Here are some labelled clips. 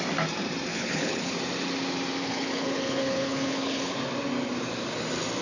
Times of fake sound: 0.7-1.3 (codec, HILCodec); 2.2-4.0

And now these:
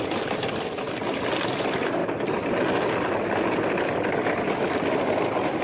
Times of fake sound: none

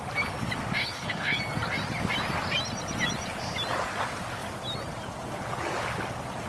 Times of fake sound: 0.8-1.4 (codec, HILCodec)

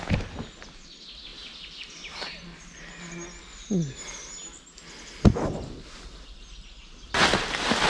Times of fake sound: none

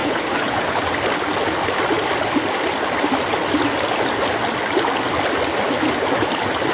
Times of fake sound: 0.0-0.8 (codec, HILCodec)

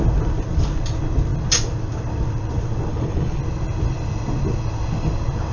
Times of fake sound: 2.9-3.4 (codec, HILCodec)

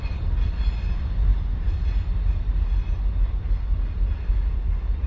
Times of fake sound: none

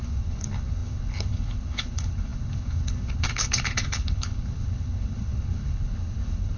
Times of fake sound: 0.0-6.6 (codec, HILCodec)